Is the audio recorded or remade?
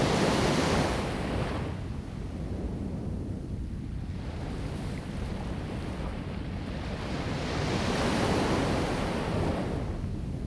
recorded